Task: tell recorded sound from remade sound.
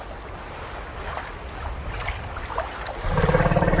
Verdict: recorded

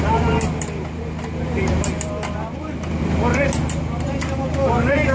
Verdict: recorded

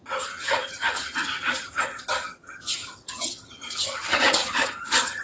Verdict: remade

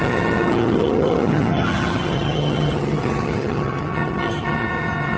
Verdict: remade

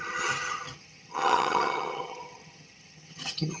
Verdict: remade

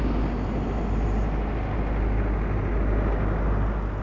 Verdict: recorded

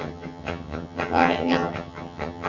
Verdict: remade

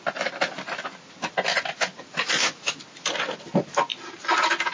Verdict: recorded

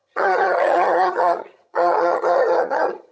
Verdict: remade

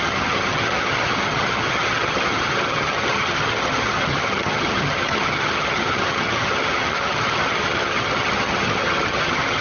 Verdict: remade